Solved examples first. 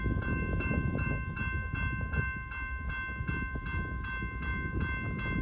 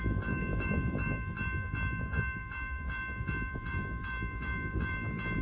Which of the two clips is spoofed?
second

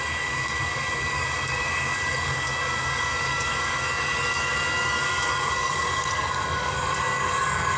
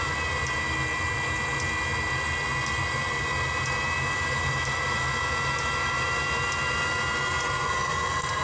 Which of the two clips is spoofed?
first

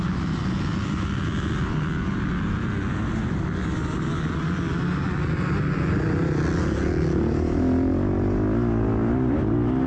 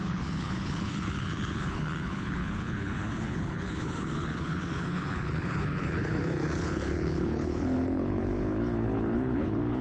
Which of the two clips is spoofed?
second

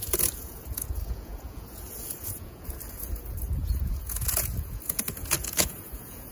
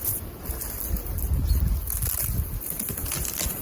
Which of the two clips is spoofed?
first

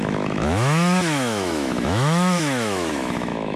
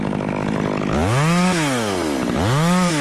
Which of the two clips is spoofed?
first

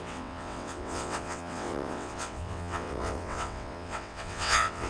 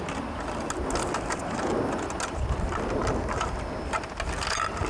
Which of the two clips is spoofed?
first